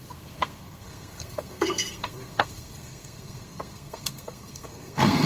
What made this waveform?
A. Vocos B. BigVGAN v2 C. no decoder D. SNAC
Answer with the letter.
D